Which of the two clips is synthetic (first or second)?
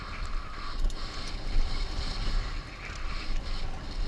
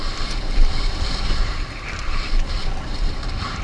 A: second